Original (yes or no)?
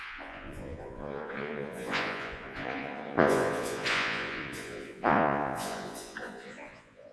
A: no